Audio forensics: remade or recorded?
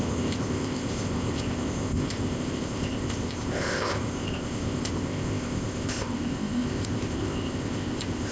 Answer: remade